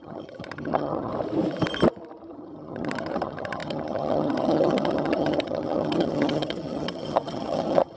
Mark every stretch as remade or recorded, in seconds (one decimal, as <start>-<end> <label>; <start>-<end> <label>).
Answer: 0.0-1.1 remade; 1.1-2.3 recorded; 2.3-8.0 remade